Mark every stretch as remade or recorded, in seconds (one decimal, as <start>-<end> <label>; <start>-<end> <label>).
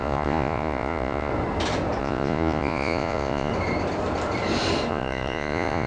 0.0-1.3 remade; 1.3-2.0 recorded; 2.0-3.5 remade; 3.5-4.9 recorded; 4.9-5.9 remade